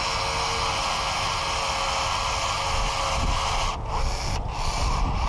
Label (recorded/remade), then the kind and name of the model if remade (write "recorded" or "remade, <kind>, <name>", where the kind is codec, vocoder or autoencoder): recorded